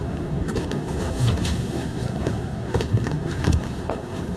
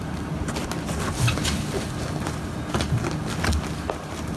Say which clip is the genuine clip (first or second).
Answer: second